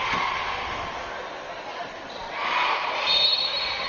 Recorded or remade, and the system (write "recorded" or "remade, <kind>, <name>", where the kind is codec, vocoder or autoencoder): recorded